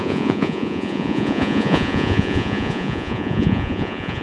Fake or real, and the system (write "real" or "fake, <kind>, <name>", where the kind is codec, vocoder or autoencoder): fake, vocoder, Vocos